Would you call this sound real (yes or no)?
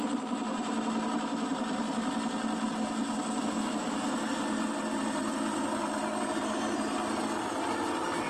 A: yes